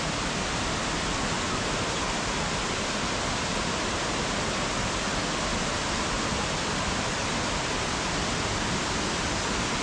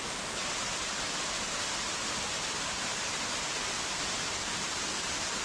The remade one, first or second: second